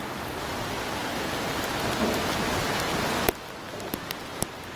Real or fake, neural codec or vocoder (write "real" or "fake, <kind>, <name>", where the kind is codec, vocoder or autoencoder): real